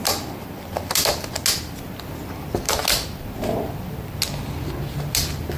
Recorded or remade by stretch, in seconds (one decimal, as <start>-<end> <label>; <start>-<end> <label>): 0.0-5.6 recorded